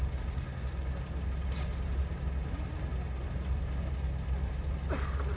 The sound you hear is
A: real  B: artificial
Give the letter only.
A